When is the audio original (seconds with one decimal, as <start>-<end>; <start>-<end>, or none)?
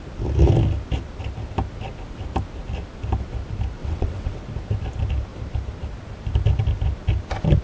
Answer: 0.0-3.8; 4.4-7.6